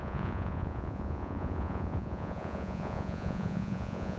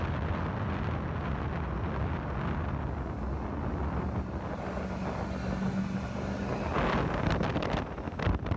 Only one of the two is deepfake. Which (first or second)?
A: first